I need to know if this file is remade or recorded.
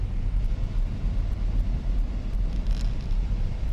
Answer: remade